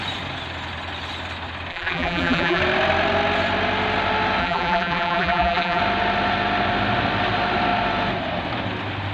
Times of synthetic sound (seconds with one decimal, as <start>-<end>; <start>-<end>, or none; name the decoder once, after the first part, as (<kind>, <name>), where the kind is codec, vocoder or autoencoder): 1.7-2.6 (vocoder, BigVGAN v2); 4.4-5.8